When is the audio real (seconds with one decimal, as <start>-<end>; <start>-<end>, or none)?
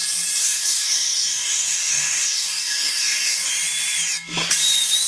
0.0-0.4; 3.5-5.1